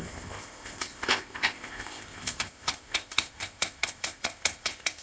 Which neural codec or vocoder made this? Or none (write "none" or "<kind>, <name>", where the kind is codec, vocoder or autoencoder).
codec, ZipCodec